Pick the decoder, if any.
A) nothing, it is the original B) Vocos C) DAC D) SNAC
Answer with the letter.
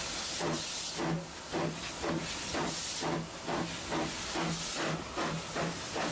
A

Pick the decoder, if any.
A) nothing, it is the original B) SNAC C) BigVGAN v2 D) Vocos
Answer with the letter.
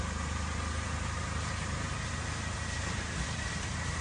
A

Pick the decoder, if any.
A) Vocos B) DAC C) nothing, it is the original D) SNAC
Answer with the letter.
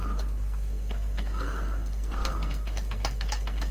D